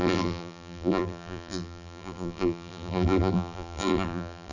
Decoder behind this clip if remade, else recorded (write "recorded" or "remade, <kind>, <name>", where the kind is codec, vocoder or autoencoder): remade, vocoder, BigVGAN v2